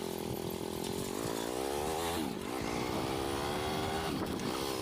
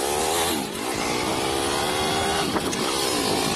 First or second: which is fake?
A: first